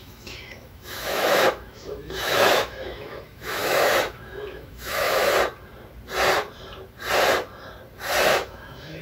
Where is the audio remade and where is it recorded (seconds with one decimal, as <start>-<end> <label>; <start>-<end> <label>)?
0.0-5.2 remade; 5.2-8.3 recorded; 8.3-9.0 remade